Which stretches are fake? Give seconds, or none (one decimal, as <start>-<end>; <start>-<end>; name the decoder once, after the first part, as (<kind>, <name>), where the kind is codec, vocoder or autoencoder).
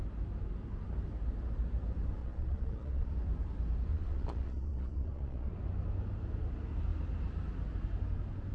2.2-3.1 (vocoder, Vocos); 3.9-5.5